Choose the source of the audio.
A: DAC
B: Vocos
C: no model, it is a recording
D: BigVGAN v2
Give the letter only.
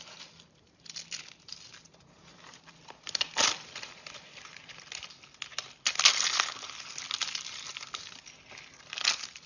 C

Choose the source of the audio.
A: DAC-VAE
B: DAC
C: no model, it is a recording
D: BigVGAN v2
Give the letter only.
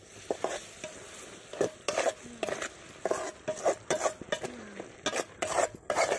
C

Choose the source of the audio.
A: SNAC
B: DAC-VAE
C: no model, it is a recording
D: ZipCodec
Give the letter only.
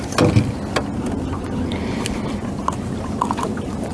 C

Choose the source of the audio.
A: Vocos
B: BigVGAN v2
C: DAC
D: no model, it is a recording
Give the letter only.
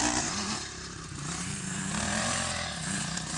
B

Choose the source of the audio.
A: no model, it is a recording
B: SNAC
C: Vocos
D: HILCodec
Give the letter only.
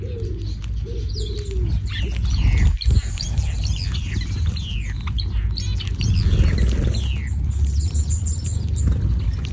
A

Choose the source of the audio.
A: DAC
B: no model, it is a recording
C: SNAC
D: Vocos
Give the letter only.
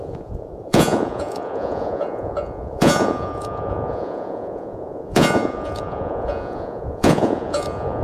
D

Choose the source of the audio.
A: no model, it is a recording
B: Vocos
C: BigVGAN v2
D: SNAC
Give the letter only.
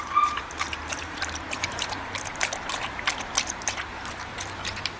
C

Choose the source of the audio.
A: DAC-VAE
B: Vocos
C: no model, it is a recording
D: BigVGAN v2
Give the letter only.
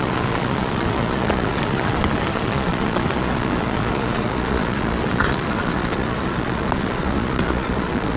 B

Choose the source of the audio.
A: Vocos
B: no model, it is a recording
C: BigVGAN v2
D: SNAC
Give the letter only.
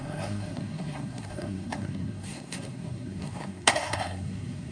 D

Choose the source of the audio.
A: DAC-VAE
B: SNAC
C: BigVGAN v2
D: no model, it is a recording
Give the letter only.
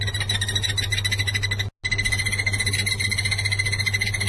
D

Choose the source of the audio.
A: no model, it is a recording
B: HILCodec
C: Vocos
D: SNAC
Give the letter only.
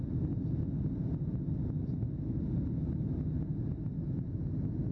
A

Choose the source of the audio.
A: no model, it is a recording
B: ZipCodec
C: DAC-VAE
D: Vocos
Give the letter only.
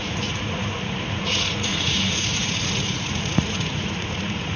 D